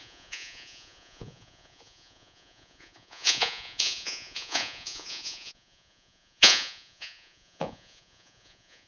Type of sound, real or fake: fake